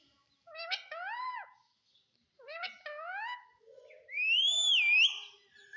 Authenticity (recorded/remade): recorded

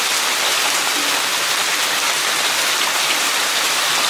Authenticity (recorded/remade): recorded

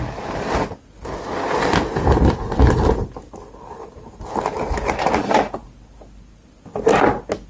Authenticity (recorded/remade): recorded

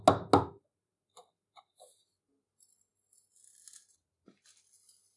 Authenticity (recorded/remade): recorded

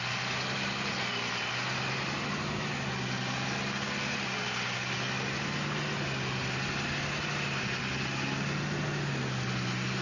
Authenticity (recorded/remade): recorded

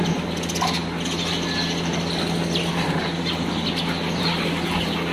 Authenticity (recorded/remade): recorded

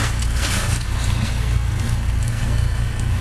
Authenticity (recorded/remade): remade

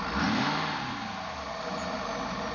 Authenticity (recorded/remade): recorded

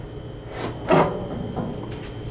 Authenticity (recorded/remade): recorded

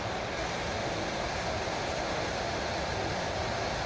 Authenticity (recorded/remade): recorded